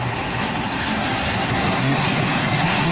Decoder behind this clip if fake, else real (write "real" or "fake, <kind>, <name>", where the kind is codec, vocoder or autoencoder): fake, codec, SNAC